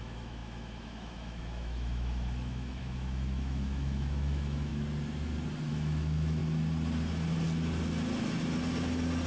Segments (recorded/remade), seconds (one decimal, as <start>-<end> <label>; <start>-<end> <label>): 0.0-4.7 remade; 4.7-5.7 recorded; 5.7-6.4 remade; 6.4-9.3 recorded